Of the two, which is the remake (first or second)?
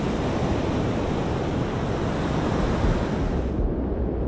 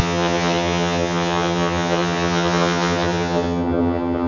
second